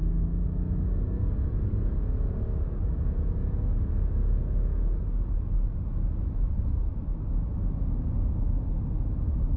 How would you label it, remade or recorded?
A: recorded